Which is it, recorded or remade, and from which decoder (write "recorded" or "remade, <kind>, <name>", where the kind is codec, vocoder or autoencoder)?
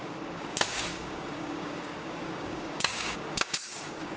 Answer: remade, codec, DAC